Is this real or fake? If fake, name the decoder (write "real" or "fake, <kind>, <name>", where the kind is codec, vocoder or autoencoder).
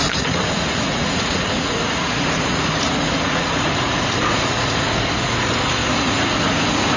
fake, vocoder, Vocos